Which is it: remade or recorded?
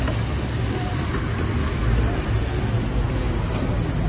recorded